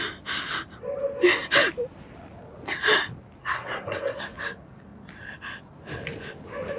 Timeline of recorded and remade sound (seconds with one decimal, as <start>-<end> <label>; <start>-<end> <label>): 0.0-3.4 recorded; 3.4-4.2 remade; 4.2-6.8 recorded